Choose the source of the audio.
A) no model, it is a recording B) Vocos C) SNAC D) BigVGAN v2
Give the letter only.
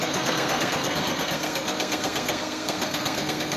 C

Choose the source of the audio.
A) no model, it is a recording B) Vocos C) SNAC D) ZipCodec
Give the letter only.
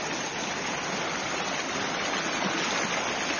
A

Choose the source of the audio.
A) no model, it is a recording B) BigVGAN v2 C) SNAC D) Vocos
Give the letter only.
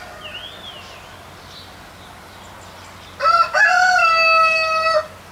A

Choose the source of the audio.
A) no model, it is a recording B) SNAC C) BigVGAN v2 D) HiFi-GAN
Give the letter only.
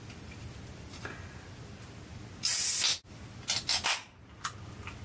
A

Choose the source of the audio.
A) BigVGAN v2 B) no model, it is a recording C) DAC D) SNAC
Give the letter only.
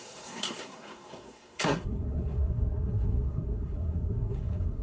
D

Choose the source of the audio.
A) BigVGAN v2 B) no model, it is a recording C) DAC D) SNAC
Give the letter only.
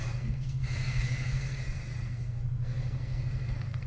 D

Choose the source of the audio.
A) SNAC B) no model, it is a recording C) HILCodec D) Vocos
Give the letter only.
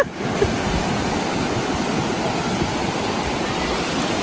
B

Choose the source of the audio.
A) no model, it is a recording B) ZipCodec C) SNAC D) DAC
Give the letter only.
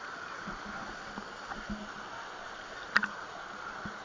A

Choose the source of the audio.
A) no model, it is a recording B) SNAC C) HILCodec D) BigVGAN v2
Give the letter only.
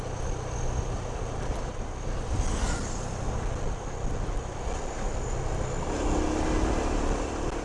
A